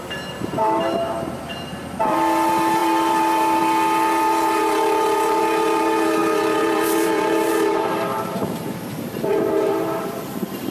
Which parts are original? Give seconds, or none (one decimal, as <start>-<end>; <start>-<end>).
none